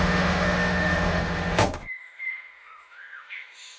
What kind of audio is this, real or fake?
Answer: fake